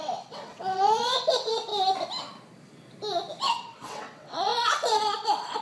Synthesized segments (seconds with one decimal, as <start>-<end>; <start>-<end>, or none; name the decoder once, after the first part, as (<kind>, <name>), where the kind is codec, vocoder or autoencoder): 0.0-1.7 (vocoder, WaveNeXt); 3.5-5.6